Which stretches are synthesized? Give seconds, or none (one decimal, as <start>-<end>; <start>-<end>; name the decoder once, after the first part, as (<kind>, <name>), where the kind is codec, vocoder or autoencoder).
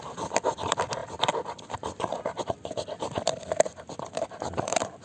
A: none